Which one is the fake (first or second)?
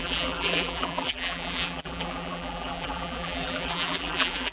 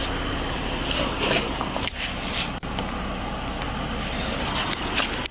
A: first